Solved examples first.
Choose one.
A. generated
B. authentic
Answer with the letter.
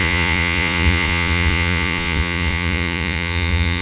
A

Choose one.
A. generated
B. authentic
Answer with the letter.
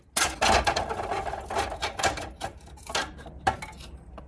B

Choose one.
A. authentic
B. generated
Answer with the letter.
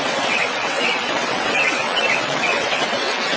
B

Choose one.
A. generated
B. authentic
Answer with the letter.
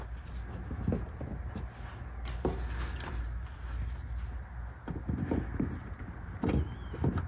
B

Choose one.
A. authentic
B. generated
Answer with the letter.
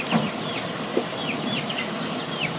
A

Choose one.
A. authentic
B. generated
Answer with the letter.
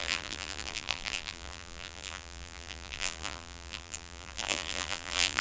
B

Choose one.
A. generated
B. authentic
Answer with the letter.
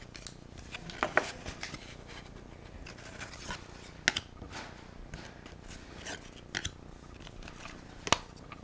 B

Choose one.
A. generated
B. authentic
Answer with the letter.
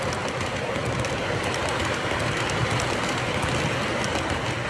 B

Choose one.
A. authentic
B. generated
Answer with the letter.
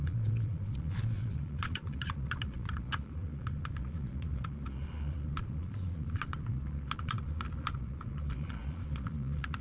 B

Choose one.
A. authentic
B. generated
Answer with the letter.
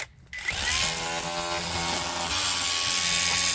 A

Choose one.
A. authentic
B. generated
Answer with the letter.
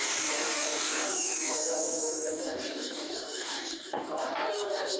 B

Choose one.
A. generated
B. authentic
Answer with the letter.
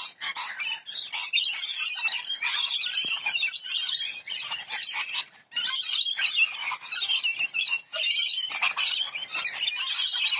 B